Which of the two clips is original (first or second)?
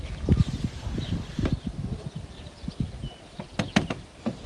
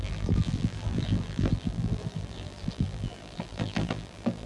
first